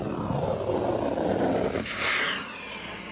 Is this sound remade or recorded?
recorded